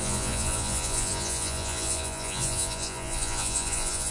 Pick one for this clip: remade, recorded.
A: remade